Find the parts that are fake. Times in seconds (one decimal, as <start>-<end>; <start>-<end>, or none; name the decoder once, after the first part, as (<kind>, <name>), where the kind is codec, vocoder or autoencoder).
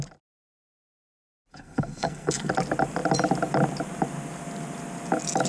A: 1.5-2.5 (codec, SNAC)